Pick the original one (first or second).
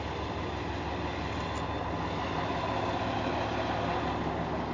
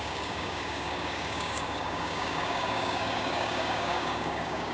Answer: first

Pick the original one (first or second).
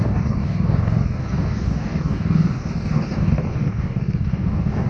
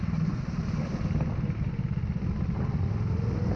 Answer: second